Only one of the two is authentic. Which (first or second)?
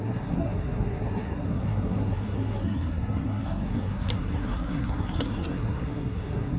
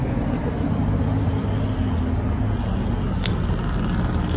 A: second